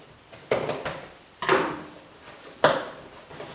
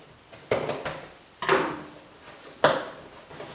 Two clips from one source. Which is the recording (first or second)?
second